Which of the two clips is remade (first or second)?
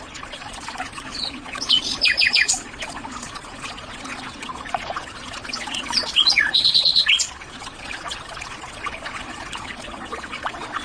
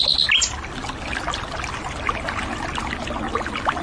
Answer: first